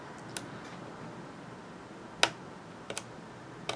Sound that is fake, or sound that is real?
real